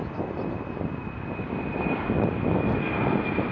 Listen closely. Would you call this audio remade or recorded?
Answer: recorded